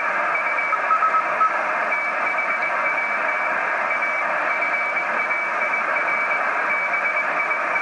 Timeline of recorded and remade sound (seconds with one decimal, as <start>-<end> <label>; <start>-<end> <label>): 0.0-7.8 recorded